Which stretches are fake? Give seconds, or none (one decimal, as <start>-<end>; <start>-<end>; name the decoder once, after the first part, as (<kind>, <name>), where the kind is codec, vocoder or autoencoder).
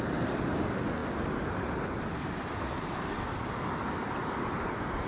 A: none